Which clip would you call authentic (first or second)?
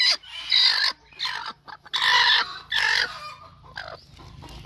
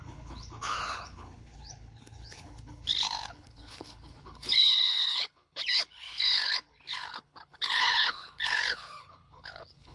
first